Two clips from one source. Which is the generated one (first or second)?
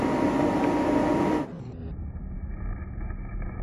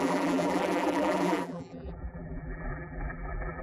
second